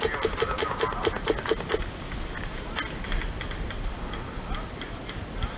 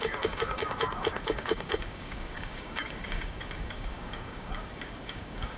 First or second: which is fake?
second